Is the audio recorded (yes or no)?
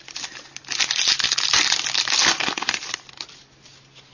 yes